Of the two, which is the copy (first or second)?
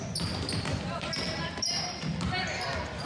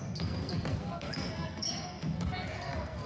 second